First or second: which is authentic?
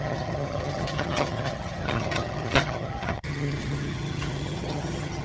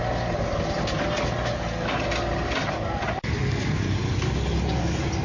second